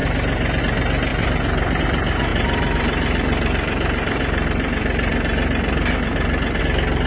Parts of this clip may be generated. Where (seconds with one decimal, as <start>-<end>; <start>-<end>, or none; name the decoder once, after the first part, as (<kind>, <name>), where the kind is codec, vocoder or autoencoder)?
1.1-1.8 (vocoder, BigVGAN v2); 2.3-6.6